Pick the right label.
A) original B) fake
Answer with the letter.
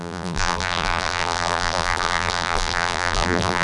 B